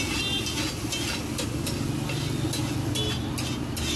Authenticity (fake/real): real